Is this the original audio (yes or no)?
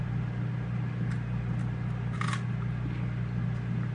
yes